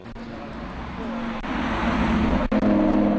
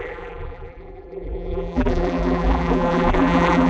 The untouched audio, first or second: first